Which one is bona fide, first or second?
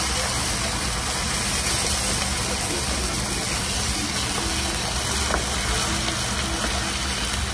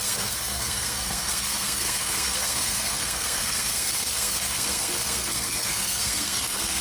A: first